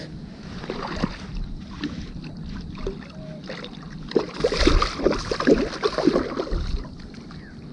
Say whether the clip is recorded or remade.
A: recorded